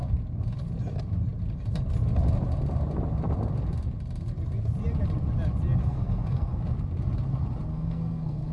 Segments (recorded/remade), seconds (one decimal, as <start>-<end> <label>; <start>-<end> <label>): 0.0-5.8 recorded; 5.8-6.6 remade; 6.6-7.7 recorded; 7.7-8.5 remade